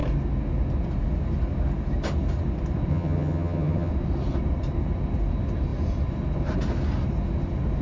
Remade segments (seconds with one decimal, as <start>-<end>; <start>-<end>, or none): 2.9-3.9